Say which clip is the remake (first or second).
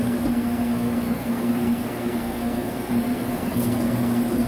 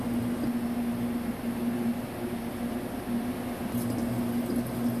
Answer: first